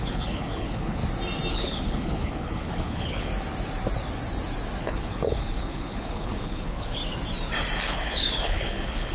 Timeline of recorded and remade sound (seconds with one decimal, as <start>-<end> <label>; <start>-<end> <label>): 0.0-1.0 remade; 1.0-1.5 recorded; 1.5-3.3 remade; 3.3-4.8 recorded; 4.8-7.0 remade; 7.0-7.8 recorded; 7.8-9.1 remade